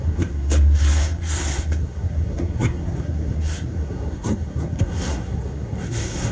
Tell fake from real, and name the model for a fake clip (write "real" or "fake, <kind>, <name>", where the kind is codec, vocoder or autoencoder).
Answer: fake, codec, SNAC